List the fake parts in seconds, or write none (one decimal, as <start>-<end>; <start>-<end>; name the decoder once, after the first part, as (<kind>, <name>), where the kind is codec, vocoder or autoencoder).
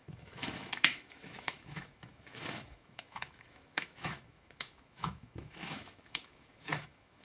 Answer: 0.0-7.2 (autoencoder, DAC-VAE)